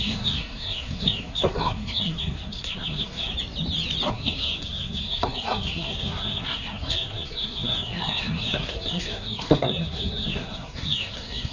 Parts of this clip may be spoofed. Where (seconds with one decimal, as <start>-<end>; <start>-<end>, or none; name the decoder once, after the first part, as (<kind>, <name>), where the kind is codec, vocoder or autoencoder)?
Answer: 0.0-3.3 (codec, SNAC); 4.1-11.5